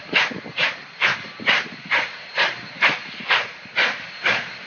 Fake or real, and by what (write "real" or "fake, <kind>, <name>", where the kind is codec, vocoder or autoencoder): real